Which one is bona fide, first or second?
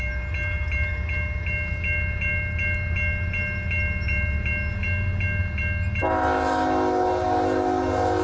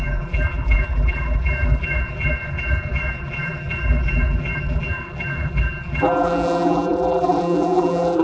first